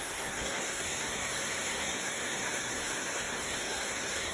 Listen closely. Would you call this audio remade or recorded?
remade